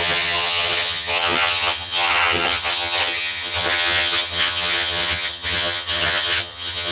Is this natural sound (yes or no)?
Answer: no